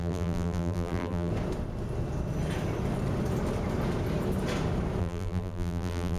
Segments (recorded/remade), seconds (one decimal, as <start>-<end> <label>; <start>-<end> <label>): 0.0-1.3 remade; 1.3-5.0 recorded; 5.0-6.2 remade